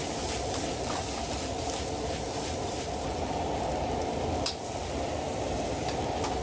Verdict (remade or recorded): recorded